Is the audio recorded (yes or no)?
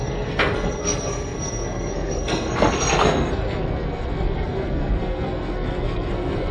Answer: no